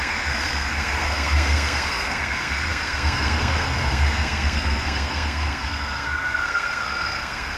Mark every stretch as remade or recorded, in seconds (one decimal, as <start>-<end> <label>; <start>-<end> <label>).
0.0-7.6 remade